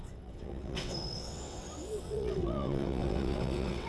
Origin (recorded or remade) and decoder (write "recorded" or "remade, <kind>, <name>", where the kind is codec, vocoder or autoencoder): remade, vocoder, WaveNeXt